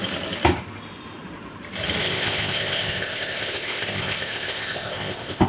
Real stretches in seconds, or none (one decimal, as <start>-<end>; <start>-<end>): 0.0-2.0